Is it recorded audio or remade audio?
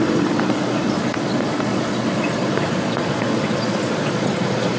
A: remade